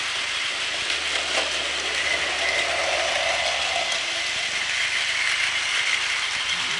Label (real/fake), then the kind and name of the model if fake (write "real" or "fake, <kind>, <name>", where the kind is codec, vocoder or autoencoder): real